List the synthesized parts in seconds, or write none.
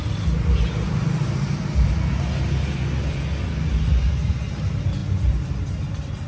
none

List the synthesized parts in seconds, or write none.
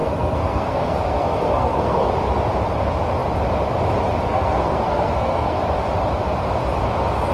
0.0-2.1 (codec, SNAC); 4.3-5.6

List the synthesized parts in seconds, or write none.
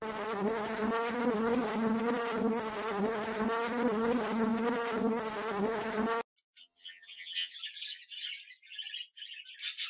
6.6-7.5 (vocoder, HiFi-GAN)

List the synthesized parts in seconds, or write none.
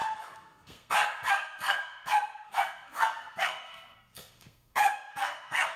0.0-5.8 (codec, SNAC)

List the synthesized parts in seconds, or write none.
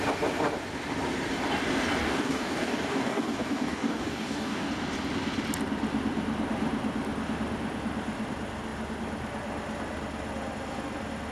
2.0-4.7 (codec, DAC)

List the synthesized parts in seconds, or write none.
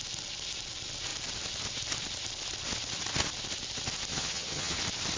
4.1-4.8 (vocoder, HiFi-GAN)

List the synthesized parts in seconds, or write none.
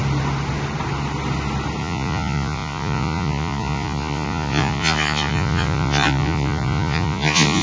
1.8-7.6 (vocoder, Vocos)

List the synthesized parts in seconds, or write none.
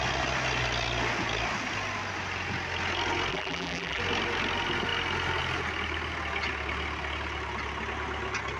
3.3-4.0 (vocoder, BigVGAN v2)